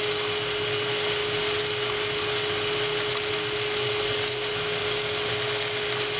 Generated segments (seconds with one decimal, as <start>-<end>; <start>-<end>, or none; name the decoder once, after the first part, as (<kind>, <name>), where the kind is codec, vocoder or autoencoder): 4.8-5.3 (codec, DAC)